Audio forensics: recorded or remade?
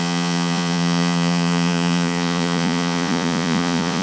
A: remade